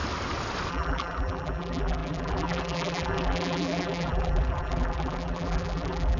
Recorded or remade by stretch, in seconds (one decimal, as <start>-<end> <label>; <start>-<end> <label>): 0.0-0.7 recorded; 0.7-6.2 remade